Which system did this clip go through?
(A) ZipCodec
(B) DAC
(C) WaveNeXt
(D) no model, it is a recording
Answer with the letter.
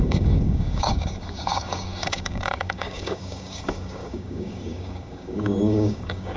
B